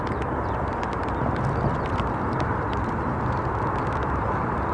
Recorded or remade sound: recorded